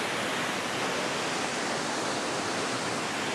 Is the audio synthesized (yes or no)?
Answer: no